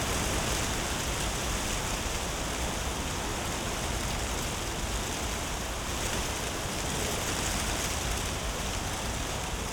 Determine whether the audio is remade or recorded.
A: recorded